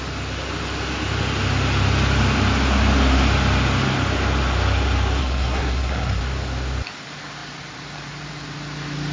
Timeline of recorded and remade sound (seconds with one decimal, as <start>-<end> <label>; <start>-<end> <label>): 0.0-5.2 recorded; 5.2-6.2 remade; 6.2-9.1 recorded